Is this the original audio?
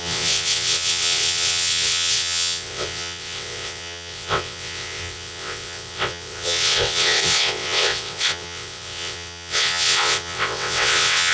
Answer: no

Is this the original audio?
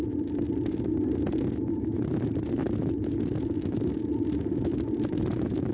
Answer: yes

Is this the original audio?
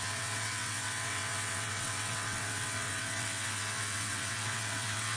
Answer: no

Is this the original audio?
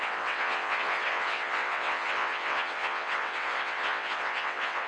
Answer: no